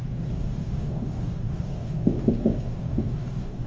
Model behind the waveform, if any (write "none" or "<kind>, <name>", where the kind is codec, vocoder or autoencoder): codec, DAC